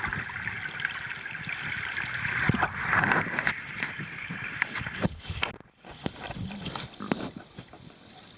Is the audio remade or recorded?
recorded